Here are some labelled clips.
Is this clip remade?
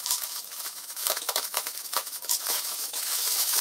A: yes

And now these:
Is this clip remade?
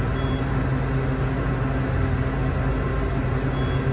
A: no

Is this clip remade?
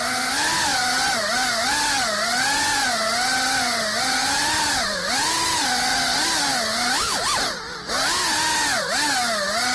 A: no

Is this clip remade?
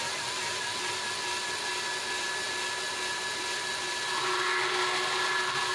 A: no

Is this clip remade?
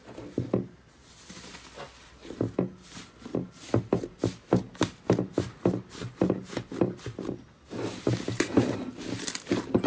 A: no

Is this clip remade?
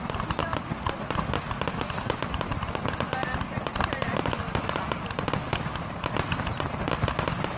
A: no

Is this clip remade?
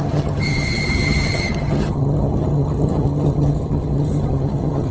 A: yes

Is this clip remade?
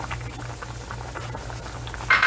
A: no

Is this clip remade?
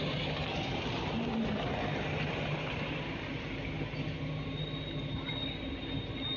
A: no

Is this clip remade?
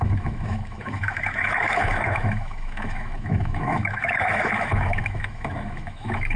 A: yes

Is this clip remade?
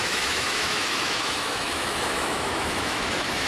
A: yes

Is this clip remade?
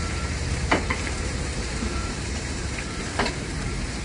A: yes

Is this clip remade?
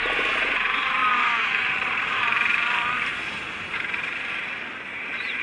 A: yes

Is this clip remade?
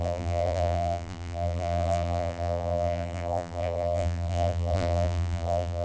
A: yes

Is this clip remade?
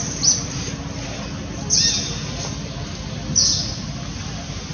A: no